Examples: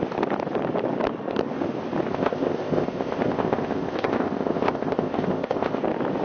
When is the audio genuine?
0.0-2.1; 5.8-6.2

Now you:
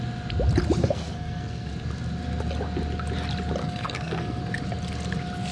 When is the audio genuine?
0.0-0.8; 1.7-3.6; 4.4-5.5

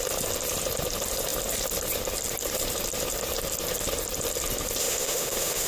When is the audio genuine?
0.0-4.8

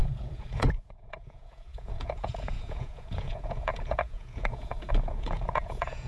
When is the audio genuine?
none